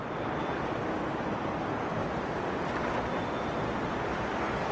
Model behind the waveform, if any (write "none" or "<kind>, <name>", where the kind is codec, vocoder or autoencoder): none